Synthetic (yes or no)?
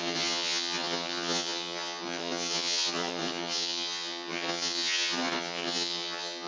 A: yes